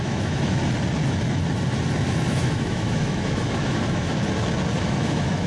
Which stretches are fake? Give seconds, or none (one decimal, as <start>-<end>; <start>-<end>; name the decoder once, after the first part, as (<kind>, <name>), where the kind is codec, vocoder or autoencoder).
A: 0.0-0.6 (autoencoder, DAC-VAE); 2.3-4.2; 4.8-5.5